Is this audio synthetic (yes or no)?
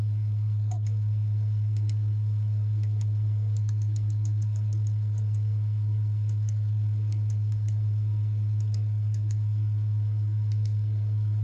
yes